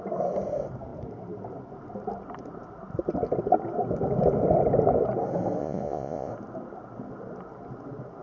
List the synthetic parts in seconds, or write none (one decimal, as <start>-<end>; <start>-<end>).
5.6-6.3